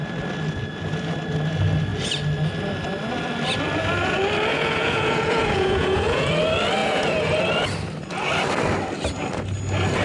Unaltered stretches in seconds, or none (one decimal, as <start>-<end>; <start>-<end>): 0.0-4.5; 6.3-6.8; 7.4-10.0

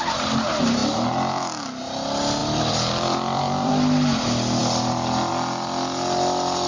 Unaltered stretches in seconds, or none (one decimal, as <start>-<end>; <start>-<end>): 0.0-2.4; 3.7-6.7

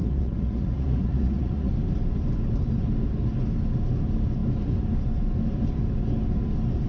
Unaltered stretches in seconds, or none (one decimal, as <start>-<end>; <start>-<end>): 1.7-6.9